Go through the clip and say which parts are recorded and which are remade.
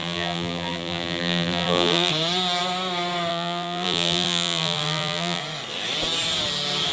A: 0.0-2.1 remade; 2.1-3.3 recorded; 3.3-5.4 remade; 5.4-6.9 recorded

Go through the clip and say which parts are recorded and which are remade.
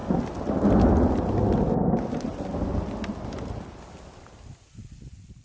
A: 0.0-5.4 recorded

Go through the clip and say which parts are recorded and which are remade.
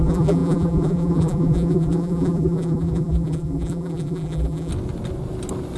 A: 0.0-4.7 remade; 4.7-5.8 recorded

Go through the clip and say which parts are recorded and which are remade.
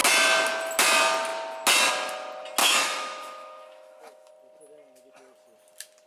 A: 0.0-2.6 recorded; 2.6-4.3 remade; 4.3-6.1 recorded